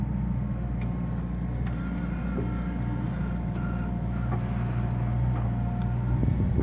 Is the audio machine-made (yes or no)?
no